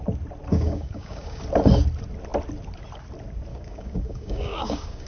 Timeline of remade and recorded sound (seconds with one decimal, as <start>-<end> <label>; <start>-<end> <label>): 0.0-0.5 recorded; 0.5-1.4 remade; 1.4-3.5 recorded; 3.5-5.1 remade